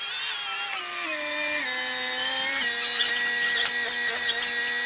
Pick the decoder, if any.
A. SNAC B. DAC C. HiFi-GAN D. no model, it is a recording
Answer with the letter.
D